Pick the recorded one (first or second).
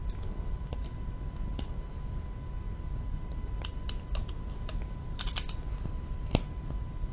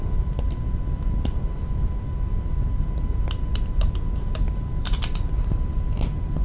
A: first